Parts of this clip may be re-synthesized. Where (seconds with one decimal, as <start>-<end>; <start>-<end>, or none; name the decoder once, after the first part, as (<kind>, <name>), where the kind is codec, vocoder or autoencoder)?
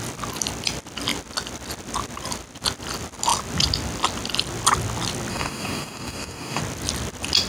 5.3-6.6 (codec, DAC)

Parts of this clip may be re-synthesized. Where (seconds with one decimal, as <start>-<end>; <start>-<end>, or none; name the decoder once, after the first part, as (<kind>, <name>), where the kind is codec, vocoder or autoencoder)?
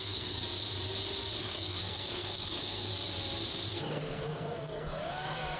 0.0-0.4 (codec, SNAC); 1.4-2.9; 3.7-5.6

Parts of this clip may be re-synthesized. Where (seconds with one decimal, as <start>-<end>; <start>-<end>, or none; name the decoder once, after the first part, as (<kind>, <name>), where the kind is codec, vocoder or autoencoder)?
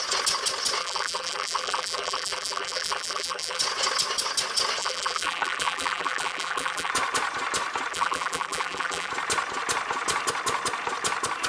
0.8-3.6 (vocoder, BigVGAN v2); 4.8-6.9; 7.9-9.1